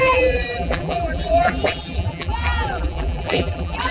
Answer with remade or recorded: remade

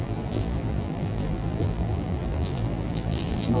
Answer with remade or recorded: remade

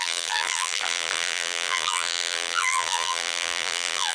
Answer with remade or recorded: remade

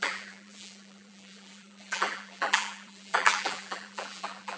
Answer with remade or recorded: remade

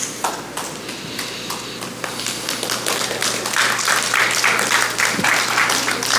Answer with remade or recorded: recorded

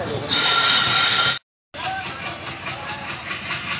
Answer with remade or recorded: recorded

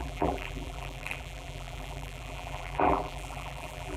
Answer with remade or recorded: remade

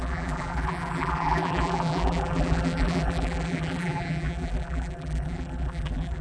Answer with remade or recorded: remade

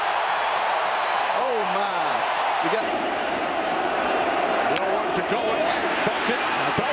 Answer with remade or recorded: remade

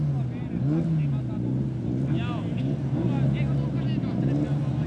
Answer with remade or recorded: recorded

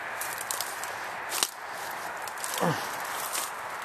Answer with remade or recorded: recorded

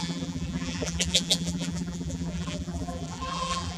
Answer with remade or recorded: remade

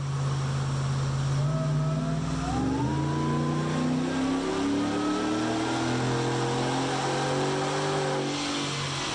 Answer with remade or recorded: recorded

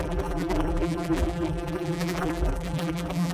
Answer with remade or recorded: remade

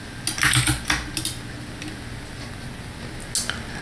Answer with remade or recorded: recorded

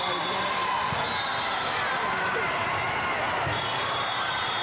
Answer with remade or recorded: recorded